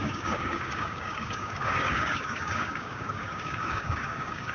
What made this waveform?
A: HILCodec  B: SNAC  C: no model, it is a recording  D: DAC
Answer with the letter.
D